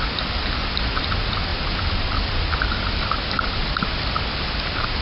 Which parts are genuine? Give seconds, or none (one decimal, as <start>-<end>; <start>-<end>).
0.0-5.0